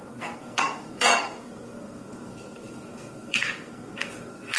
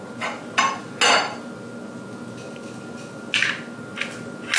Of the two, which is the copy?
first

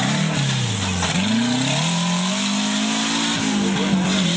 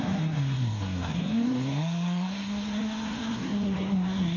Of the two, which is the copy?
second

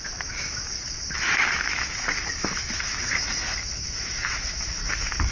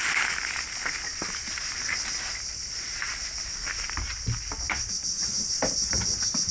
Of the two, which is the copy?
first